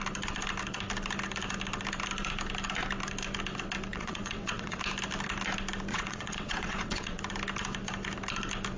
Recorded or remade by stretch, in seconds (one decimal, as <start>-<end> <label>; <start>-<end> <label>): 0.0-3.9 recorded; 3.9-4.8 remade; 4.8-5.9 recorded; 5.9-7.2 remade; 7.2-8.8 recorded